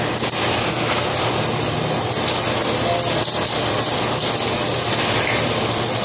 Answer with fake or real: real